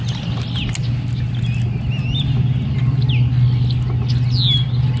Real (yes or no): yes